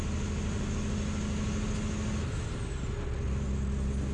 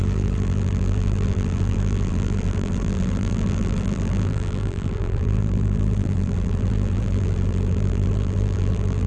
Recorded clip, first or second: first